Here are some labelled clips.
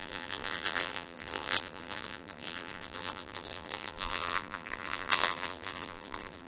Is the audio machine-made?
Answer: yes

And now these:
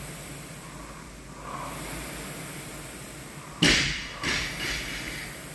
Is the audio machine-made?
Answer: no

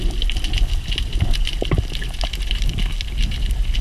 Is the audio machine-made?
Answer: no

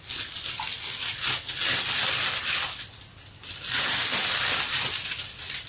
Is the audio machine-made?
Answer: no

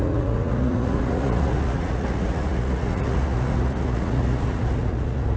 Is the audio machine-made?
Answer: yes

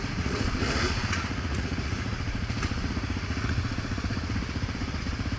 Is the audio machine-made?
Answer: yes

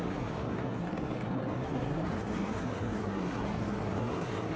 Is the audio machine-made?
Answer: yes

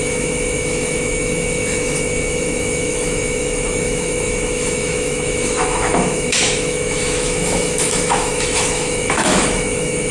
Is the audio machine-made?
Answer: yes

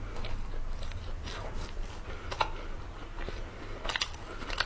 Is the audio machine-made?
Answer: no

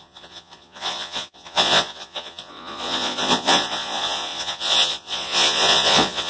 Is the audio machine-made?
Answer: yes